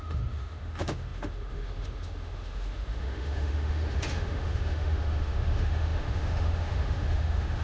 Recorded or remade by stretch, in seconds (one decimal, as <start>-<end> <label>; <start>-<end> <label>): 0.0-7.6 remade